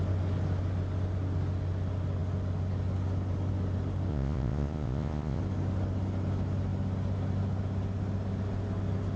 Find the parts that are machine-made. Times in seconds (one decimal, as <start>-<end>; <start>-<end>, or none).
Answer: 4.1-5.4